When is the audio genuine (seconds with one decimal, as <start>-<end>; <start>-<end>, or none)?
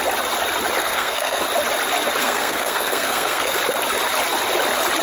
0.0-0.8; 1.4-2.2; 3.6-5.0